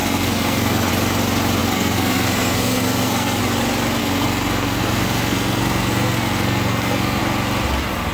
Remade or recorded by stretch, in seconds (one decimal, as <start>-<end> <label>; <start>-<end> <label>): 0.0-0.9 remade; 0.9-1.6 recorded; 1.6-3.4 remade; 3.4-4.0 recorded; 4.0-7.2 remade; 7.2-8.1 recorded

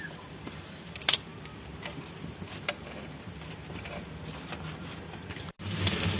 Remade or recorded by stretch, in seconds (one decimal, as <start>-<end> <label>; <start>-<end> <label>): 0.0-6.2 recorded